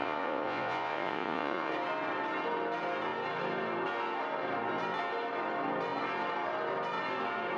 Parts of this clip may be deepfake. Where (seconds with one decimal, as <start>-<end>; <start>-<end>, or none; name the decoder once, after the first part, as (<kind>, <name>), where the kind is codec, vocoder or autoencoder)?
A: 0.0-1.7 (vocoder, Vocos)